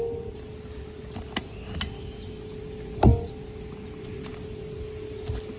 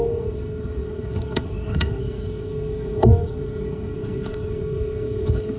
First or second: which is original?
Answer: first